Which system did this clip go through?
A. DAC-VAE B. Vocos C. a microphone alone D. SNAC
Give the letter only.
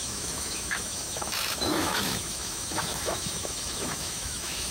A